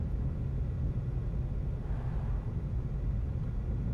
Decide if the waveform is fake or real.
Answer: real